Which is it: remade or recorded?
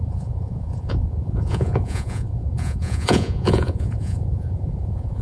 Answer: remade